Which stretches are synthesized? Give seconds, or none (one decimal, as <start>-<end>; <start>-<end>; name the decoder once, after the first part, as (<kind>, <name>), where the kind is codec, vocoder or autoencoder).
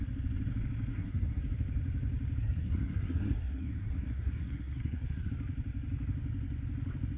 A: 0.9-1.4 (codec, SNAC); 2.4-5.3